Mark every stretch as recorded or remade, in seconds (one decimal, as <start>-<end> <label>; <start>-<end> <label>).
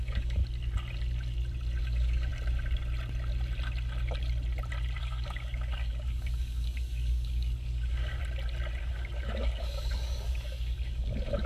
0.0-0.4 remade; 0.4-1.8 recorded; 1.8-2.3 remade; 2.3-5.0 recorded; 5.0-8.2 remade; 8.2-8.8 recorded; 8.8-11.5 remade